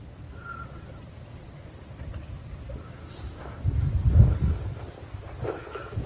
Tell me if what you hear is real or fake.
real